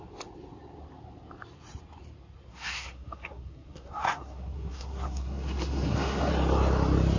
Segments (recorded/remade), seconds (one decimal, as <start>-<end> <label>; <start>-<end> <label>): 0.0-2.5 recorded; 2.5-6.3 remade; 6.3-7.2 recorded